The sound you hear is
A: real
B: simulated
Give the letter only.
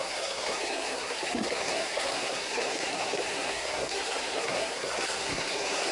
B